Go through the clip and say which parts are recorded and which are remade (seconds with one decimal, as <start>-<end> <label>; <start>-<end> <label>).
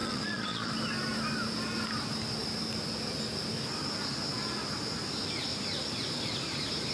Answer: 0.0-0.7 remade; 0.7-6.9 recorded